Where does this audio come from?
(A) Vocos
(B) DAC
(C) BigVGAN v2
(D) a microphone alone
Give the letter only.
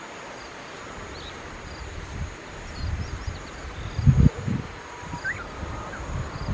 D